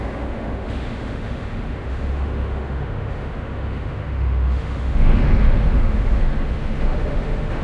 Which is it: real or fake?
fake